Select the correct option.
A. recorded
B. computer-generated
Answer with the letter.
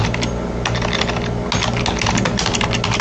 A